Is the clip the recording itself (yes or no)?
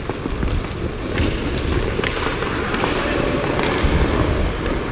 yes